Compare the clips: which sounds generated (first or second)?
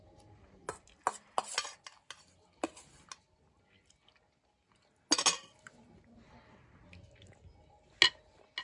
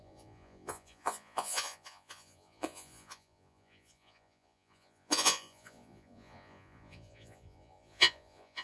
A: second